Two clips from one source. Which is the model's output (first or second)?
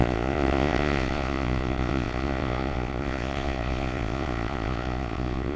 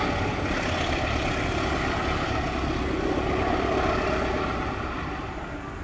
first